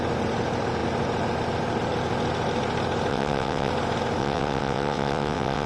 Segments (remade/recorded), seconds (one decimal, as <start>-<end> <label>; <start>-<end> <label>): 0.0-3.1 recorded; 3.1-3.7 remade; 3.7-4.2 recorded; 4.2-5.7 remade